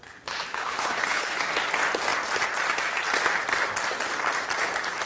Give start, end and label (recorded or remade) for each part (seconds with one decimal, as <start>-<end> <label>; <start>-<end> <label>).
0.0-0.5 recorded; 0.5-1.4 remade; 1.4-5.1 recorded